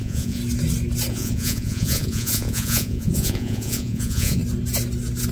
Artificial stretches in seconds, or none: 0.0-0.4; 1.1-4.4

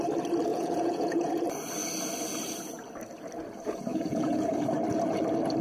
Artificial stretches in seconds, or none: 0.5-1.3; 3.9-4.5

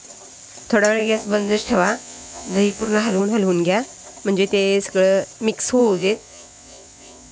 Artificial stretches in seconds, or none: 1.0-3.2; 5.8-7.3

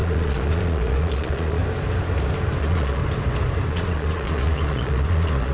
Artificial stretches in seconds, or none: 0.0-1.6; 2.6-3.0; 3.7-5.5

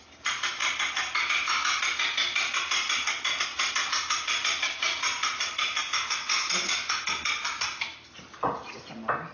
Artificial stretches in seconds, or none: none

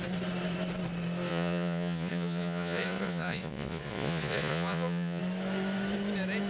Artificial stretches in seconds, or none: 1.3-5.2